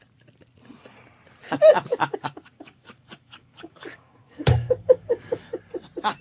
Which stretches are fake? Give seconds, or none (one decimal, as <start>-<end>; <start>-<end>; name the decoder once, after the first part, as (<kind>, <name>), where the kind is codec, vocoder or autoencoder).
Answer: 1.9-5.6 (codec, DAC)